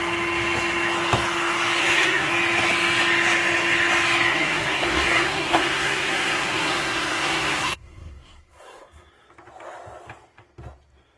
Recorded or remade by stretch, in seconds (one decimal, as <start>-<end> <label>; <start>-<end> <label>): 0.0-1.8 recorded; 1.8-2.3 remade; 2.3-4.3 recorded; 4.3-9.1 remade; 9.1-11.2 recorded